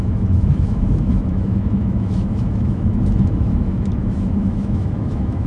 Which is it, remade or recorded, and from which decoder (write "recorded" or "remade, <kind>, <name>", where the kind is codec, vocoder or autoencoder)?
remade, autoencoder, DAC-VAE